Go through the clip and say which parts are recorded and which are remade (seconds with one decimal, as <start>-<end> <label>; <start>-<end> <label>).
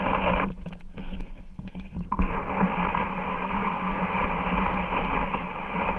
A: 0.0-1.0 recorded; 1.0-2.3 remade; 2.3-3.3 recorded; 3.3-4.0 remade; 4.0-6.0 recorded